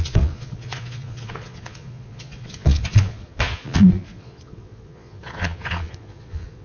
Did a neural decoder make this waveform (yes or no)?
yes